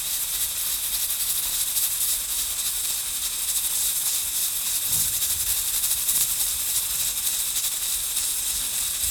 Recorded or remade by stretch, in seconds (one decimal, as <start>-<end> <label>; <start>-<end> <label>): 0.0-4.1 recorded; 4.1-6.5 remade; 6.5-9.1 recorded